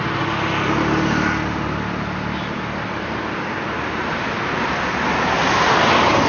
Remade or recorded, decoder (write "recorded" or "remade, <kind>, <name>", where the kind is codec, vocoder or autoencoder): recorded